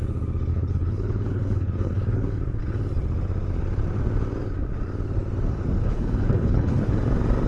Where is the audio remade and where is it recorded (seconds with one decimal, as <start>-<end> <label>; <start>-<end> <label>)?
0.0-0.5 recorded; 0.5-2.4 remade; 2.4-5.8 recorded; 5.8-6.9 remade; 6.9-7.5 recorded